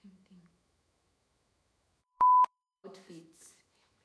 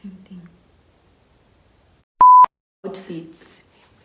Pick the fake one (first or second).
first